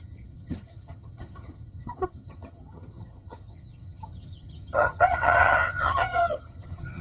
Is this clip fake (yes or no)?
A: yes